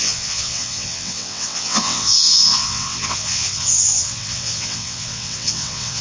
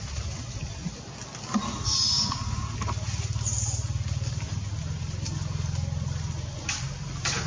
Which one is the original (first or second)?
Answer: second